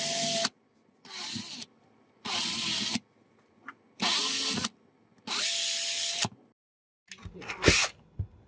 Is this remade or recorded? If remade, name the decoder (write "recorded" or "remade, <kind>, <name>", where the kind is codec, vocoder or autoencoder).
recorded